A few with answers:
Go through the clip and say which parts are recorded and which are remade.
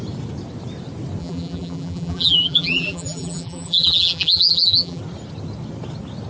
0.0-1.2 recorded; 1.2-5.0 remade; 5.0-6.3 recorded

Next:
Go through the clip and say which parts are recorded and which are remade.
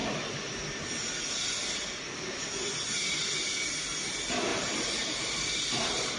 0.0-4.5 recorded; 4.5-6.2 remade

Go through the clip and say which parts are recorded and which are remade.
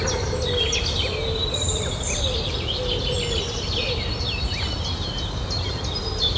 0.0-6.4 recorded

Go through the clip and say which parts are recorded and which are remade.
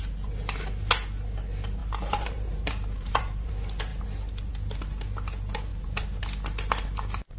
0.0-1.8 recorded; 1.8-3.5 remade; 3.5-3.9 recorded; 3.9-4.5 remade; 4.5-5.7 recorded; 5.7-6.2 remade; 6.2-7.4 recorded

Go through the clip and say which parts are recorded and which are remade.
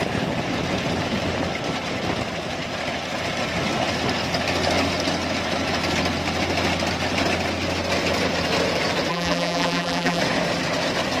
0.0-9.1 recorded; 9.1-10.2 remade; 10.2-11.2 recorded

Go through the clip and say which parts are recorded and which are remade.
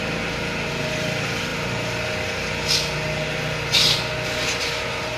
0.0-5.2 recorded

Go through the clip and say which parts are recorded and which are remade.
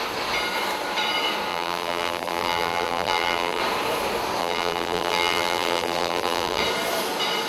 0.0-1.5 recorded; 1.5-3.6 remade; 3.6-4.4 recorded; 4.4-6.6 remade; 6.6-7.5 recorded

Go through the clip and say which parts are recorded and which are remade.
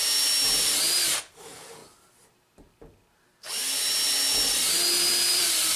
0.0-1.8 remade; 1.8-5.3 recorded; 5.3-5.8 remade